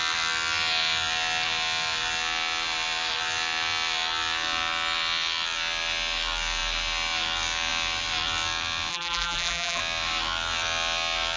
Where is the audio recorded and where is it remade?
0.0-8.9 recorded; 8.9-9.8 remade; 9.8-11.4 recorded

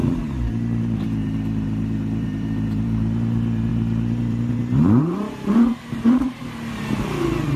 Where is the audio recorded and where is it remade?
0.0-0.8 recorded; 0.8-7.6 remade

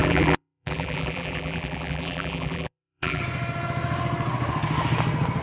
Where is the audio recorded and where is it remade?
0.0-3.2 remade; 3.2-5.4 recorded